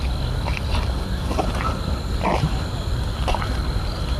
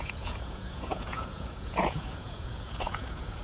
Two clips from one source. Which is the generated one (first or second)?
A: second